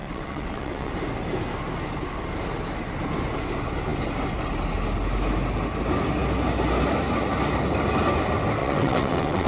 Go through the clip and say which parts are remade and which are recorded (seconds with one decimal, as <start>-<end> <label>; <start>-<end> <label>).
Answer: 0.0-0.9 remade; 0.9-8.6 recorded; 8.6-9.5 remade